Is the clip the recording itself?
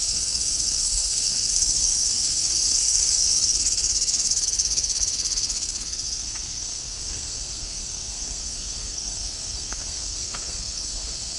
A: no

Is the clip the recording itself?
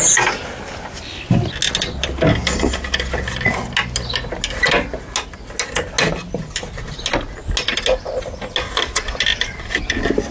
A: yes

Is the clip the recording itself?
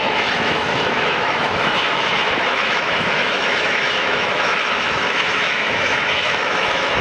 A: no